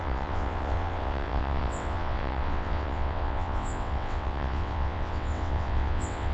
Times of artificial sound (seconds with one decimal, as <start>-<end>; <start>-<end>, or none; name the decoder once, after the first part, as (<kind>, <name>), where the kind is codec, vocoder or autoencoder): 0.0-6.3 (vocoder, WaveNeXt)

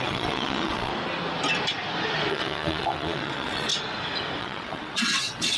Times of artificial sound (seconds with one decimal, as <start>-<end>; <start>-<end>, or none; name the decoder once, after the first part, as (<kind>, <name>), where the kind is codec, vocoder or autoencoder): 0.0-0.9 (vocoder, WaveNeXt); 2.3-3.7; 4.4-5.6

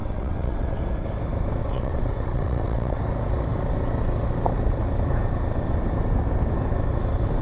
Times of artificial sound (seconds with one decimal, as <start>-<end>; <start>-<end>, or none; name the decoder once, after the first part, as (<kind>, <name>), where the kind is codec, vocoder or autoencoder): 0.0-0.8 (vocoder, WaveNeXt); 1.6-3.0